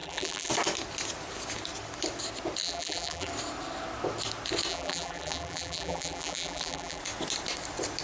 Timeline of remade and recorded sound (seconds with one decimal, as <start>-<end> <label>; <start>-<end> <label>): 0.0-0.5 remade; 0.5-2.6 recorded; 2.6-3.3 remade; 3.3-4.7 recorded; 4.7-7.0 remade; 7.0-8.0 recorded